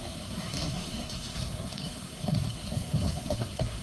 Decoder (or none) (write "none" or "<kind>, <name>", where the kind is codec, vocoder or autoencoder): codec, SNAC